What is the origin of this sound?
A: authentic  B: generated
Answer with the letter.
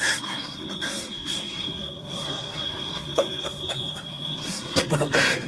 B